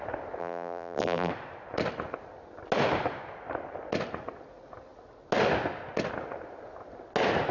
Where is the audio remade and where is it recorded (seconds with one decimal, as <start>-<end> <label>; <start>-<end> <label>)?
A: 0.0-0.4 recorded; 0.4-1.3 remade; 1.3-7.5 recorded